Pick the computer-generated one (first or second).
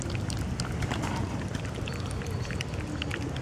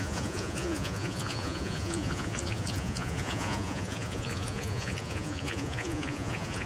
second